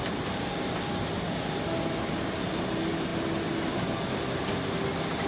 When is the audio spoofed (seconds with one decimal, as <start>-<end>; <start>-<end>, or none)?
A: none